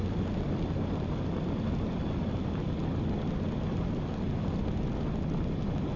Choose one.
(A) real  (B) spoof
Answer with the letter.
A